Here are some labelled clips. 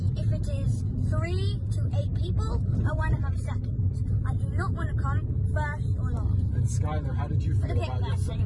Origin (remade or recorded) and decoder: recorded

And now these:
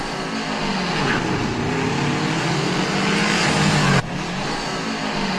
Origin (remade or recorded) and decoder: recorded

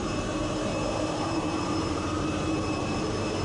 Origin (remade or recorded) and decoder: remade, vocoder, BigVGAN v2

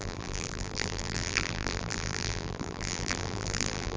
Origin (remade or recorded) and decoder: remade, vocoder, BigVGAN v2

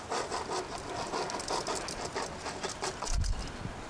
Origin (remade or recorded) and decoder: recorded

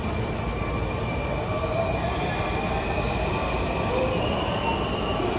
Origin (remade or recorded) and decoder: recorded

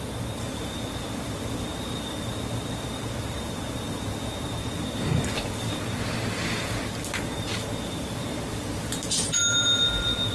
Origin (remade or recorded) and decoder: recorded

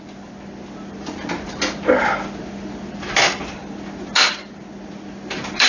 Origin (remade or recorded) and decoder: recorded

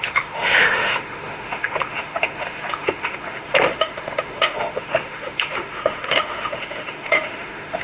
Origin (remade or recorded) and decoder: remade, autoencoder, DAC-VAE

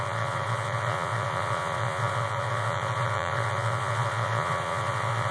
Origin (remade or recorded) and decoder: remade, vocoder, Vocos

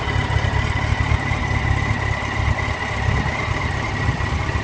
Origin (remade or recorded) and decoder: recorded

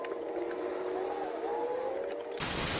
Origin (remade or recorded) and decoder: recorded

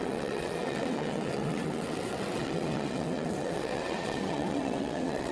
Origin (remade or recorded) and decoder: remade, vocoder, WaveNeXt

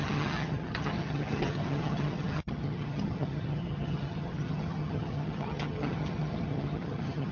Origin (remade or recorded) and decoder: remade, vocoder, HiFi-GAN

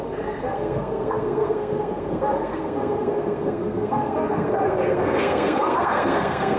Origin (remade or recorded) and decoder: remade, codec, SNAC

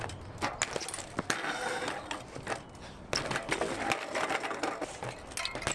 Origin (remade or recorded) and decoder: recorded